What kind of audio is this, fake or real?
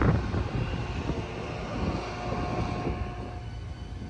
real